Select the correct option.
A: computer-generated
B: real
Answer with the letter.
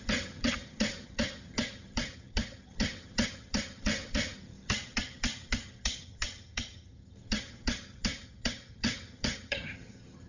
A